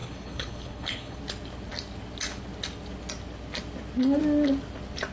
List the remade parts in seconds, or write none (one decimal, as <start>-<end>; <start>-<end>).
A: 0.0-1.2